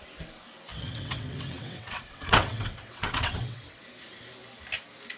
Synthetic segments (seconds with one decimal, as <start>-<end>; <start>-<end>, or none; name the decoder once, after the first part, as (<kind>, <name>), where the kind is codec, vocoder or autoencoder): 0.7-3.8 (vocoder, WaveNeXt)